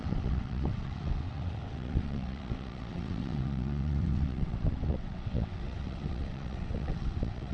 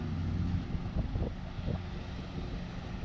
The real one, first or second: second